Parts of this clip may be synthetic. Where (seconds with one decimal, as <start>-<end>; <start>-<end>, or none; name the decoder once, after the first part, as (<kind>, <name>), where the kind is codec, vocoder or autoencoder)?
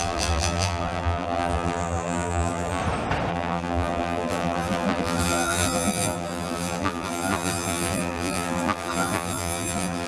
0.0-2.8 (vocoder, BigVGAN v2); 3.3-10.1